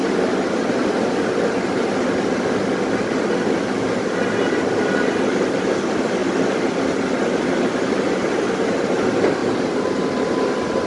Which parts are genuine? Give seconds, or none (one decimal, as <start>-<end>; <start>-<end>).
0.0-10.9